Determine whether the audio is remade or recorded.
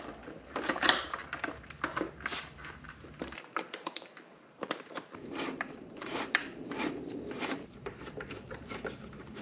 remade